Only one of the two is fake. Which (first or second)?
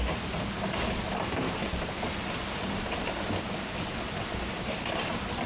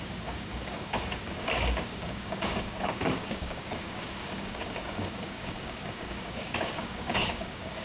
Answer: second